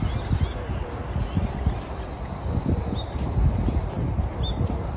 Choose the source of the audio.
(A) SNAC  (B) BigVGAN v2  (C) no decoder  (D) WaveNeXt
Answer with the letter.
C